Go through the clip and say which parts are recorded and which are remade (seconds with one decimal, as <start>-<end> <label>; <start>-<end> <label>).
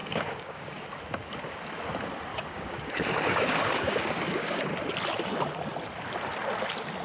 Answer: 0.0-0.8 remade; 0.8-2.3 recorded; 2.3-4.7 remade; 4.7-7.0 recorded